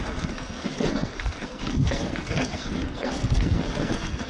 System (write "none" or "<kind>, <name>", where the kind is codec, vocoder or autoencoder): codec, SNAC